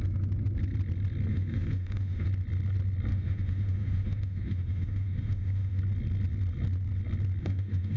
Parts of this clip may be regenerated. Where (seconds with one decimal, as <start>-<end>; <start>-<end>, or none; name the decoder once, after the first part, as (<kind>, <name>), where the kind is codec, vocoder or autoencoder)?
1.3-2.3 (autoencoder, DAC-VAE); 3.1-5.8; 7.4-8.0